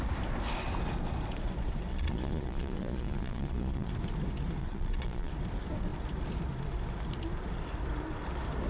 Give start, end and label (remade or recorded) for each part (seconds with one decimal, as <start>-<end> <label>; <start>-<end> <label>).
0.0-1.9 recorded; 1.9-3.9 remade; 3.9-4.6 recorded; 4.6-5.3 remade; 5.3-8.7 recorded